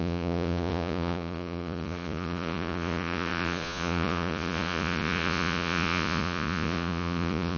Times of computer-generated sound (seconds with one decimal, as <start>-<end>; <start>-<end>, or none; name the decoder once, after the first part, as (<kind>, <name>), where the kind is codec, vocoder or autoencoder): 0.0-7.6 (vocoder, Vocos)